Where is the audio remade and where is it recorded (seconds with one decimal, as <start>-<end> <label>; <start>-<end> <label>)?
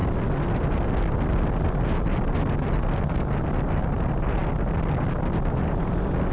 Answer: 0.0-6.3 recorded